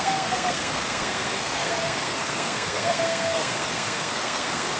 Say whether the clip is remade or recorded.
remade